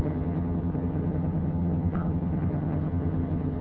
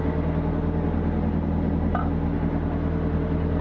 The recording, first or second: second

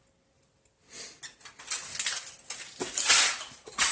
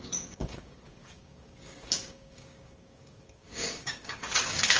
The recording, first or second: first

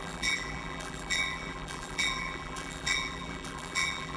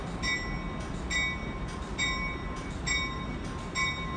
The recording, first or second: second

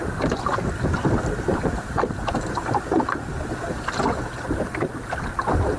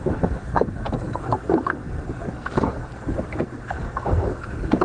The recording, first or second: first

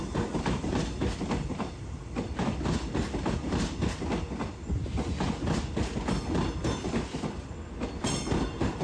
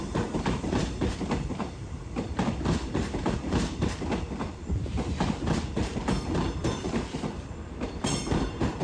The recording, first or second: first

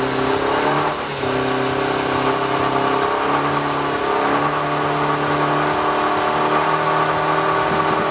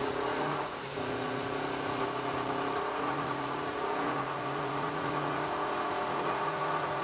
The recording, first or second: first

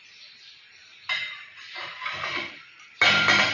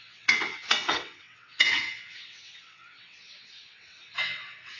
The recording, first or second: first